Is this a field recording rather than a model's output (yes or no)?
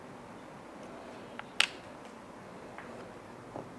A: yes